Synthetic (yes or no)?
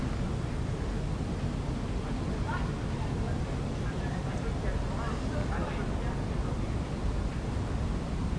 no